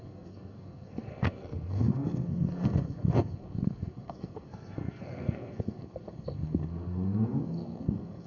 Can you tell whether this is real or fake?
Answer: fake